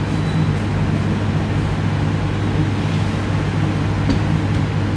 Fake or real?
real